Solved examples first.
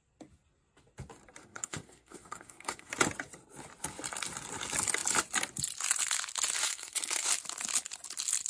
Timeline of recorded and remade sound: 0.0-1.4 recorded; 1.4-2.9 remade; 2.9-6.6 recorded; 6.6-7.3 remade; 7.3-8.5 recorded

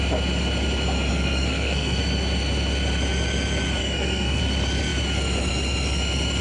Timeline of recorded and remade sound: 0.0-1.1 recorded; 1.1-2.0 remade; 2.0-3.8 recorded; 3.8-4.4 remade; 4.4-6.4 recorded

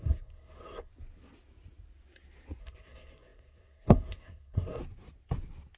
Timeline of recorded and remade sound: 0.0-0.9 remade; 0.9-2.6 recorded; 2.6-4.8 remade; 4.8-5.8 recorded